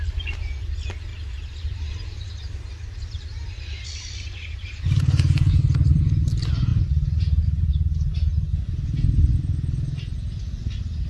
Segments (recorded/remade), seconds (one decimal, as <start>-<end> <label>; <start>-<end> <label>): 0.0-1.1 recorded; 1.1-5.5 remade; 5.5-6.7 recorded; 6.7-7.7 remade; 7.7-11.1 recorded